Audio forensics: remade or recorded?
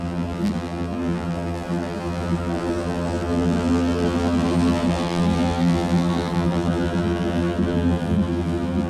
remade